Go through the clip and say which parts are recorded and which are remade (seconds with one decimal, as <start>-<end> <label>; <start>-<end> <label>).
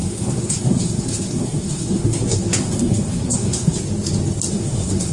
0.0-3.8 remade; 3.8-4.5 recorded; 4.5-5.1 remade